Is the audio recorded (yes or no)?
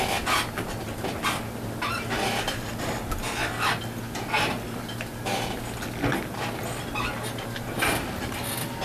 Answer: yes